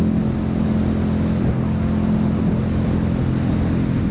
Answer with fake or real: real